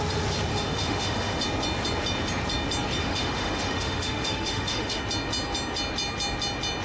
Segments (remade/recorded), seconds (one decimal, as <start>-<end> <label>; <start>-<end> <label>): 0.0-0.5 recorded; 0.5-1.4 remade; 1.4-3.0 recorded; 3.0-5.0 remade; 5.0-6.8 recorded